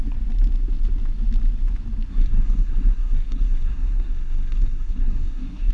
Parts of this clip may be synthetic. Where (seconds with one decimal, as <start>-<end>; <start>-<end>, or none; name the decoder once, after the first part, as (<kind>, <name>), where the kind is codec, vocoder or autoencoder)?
2.1-5.7 (codec, SNAC)